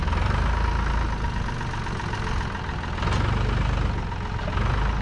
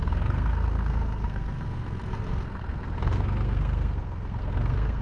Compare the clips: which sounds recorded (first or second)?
first